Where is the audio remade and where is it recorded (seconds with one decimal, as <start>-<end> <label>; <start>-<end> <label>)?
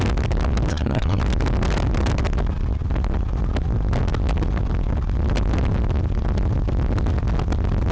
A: 0.0-0.7 recorded; 0.7-1.2 remade; 1.2-7.9 recorded